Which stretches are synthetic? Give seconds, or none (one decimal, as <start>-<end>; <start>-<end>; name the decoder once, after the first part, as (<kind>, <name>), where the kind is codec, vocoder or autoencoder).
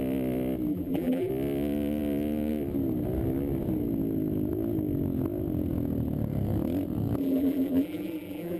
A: 0.7-1.3 (vocoder, BigVGAN v2); 7.2-8.6